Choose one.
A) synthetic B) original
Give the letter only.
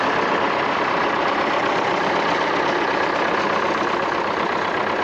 B